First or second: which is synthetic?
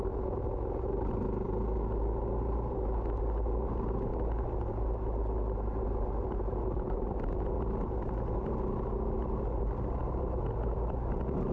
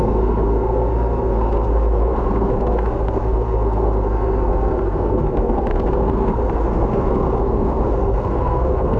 second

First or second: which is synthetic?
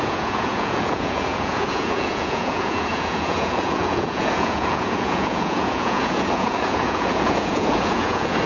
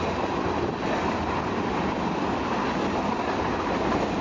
first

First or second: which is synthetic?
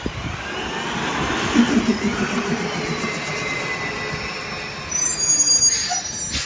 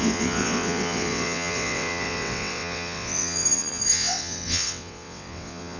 second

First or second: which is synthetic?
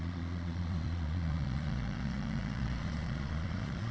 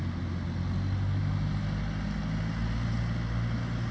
first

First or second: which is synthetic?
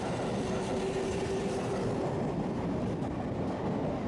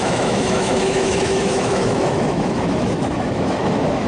second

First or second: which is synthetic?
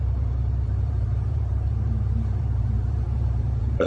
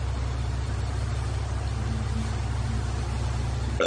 first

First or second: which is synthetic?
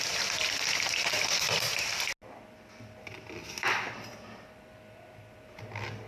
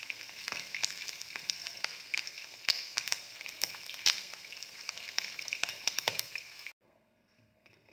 second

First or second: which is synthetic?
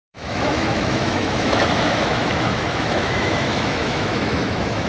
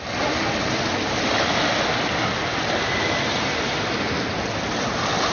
first